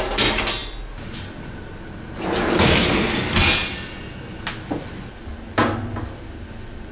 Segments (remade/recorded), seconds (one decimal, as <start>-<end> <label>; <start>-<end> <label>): 0.0-6.9 recorded